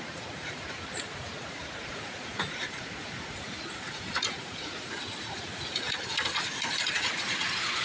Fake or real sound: fake